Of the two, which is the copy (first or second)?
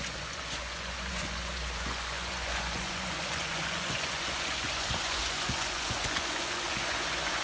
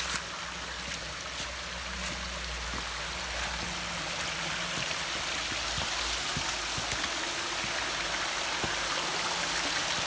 first